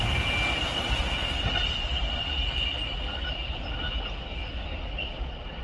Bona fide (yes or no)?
yes